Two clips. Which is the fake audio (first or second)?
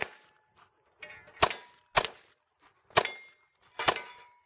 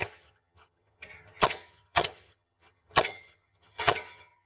second